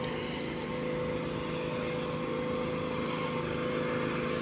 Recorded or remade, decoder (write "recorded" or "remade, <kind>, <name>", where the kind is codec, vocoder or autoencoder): recorded